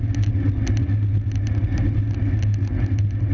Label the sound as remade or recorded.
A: recorded